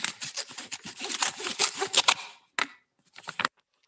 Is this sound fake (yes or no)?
no